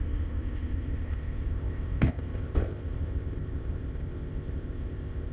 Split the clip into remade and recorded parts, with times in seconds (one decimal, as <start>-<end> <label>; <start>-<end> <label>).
0.0-5.3 remade